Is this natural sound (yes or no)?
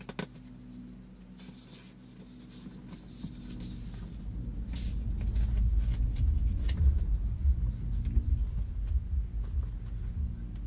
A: yes